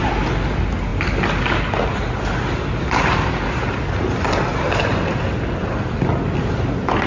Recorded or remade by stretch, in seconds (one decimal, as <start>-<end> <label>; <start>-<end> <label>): 0.0-7.1 recorded

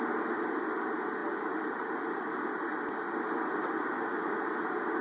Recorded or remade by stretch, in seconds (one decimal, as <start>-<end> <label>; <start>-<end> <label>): 0.0-5.0 recorded

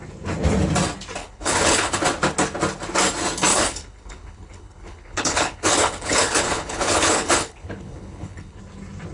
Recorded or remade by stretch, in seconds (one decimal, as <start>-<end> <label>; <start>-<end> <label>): 0.0-1.2 recorded; 1.2-2.0 remade; 2.0-3.5 recorded; 3.5-8.6 remade; 8.6-9.1 recorded

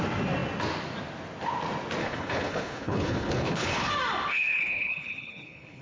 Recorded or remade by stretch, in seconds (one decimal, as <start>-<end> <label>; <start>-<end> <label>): 0.0-2.0 recorded; 2.0-3.9 remade; 3.9-4.3 recorded; 4.3-5.8 remade